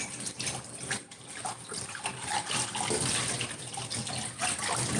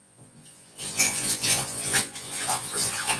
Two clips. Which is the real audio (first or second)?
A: first